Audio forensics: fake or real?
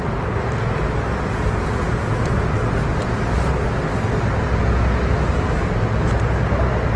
real